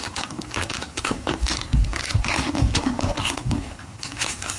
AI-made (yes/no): yes